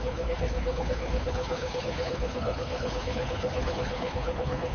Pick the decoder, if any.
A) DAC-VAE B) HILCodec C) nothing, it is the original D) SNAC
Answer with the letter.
B